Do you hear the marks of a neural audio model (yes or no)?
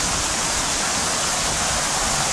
no